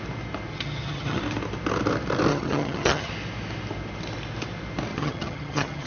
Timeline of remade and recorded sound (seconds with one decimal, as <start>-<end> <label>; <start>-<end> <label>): 0.0-0.5 recorded; 0.5-1.2 remade; 1.2-2.3 recorded; 2.3-3.1 remade; 3.1-4.9 recorded; 4.9-5.9 remade